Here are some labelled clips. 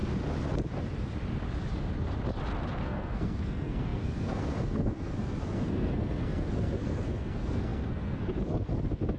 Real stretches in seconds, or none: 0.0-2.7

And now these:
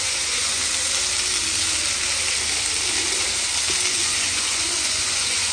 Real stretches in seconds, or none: 0.6-3.9

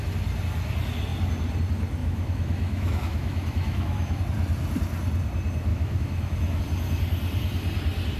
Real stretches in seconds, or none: 0.0-2.0; 4.2-5.7; 6.6-8.2

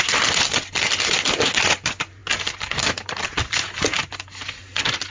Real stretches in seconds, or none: 0.0-5.1

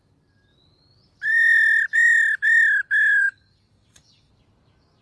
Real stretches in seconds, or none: 0.0-3.1; 4.3-5.0